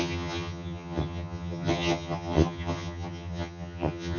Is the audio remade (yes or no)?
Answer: yes